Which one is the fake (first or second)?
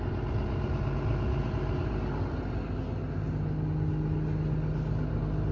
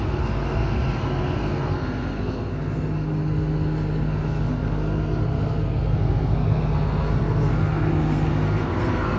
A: second